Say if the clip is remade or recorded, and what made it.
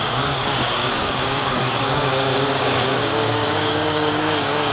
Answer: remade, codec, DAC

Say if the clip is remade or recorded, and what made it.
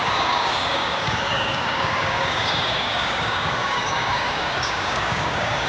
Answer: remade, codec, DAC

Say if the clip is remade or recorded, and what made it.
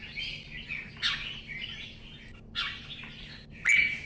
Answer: recorded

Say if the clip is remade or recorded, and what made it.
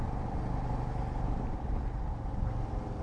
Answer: recorded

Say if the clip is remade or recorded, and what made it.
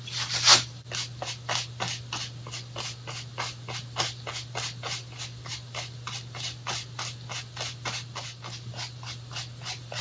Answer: recorded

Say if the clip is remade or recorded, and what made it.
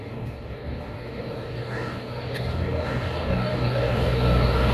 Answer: remade, codec, DAC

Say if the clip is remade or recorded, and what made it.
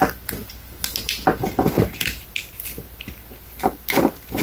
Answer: recorded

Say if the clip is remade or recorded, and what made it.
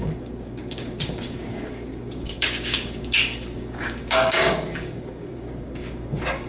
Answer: remade, codec, DAC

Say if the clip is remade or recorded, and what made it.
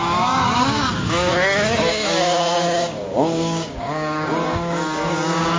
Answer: remade, codec, DAC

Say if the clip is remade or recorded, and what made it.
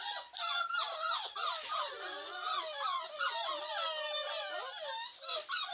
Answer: recorded